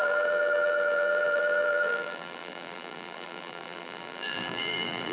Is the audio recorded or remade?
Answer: remade